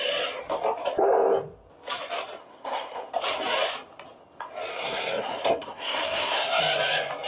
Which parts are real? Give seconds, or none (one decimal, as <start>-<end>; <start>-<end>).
0.0-2.4; 3.1-4.7; 6.6-7.3